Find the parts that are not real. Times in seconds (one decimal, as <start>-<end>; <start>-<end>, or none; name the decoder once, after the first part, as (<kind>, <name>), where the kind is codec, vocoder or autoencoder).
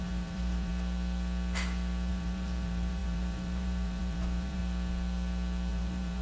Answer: 0.0-0.7 (vocoder, BigVGAN v2); 2.1-4.6; 5.7-6.2